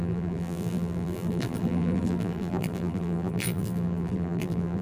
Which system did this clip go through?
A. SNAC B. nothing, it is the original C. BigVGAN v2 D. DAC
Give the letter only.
C